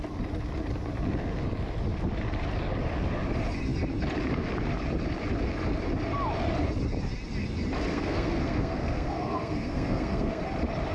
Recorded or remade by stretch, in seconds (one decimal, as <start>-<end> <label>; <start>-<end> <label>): 0.0-7.9 recorded; 7.9-10.4 remade; 10.4-10.9 recorded